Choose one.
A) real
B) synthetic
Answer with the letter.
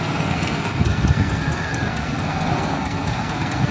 B